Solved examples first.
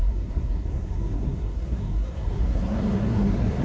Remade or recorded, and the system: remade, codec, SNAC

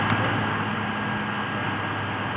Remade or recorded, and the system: recorded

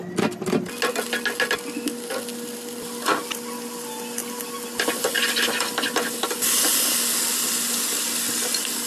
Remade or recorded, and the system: recorded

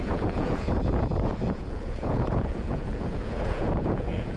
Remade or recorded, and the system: remade, vocoder, Vocos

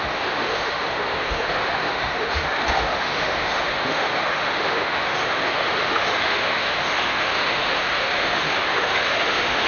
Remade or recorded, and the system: remade, autoencoder, DAC-VAE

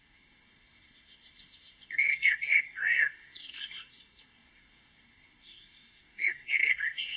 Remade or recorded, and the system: remade, codec, SNAC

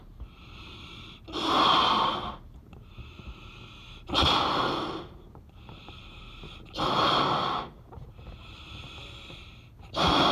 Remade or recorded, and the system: recorded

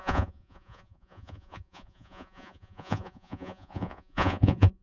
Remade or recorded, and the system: remade, vocoder, Vocos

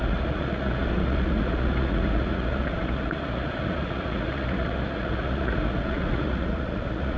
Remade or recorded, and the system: remade, vocoder, Vocos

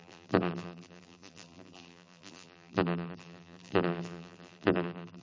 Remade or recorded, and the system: remade, vocoder, BigVGAN v2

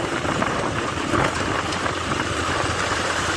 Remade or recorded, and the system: remade, vocoder, BigVGAN v2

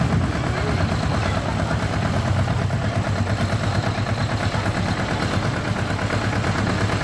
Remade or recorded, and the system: recorded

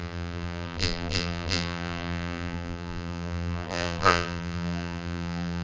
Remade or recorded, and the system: remade, vocoder, BigVGAN v2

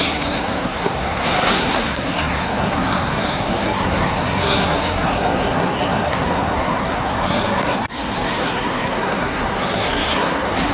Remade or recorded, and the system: remade, codec, SNAC